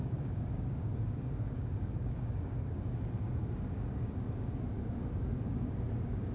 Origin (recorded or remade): remade